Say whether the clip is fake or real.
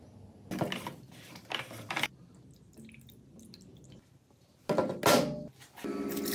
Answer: real